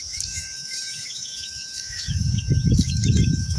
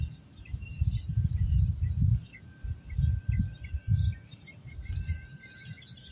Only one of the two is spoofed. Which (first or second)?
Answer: first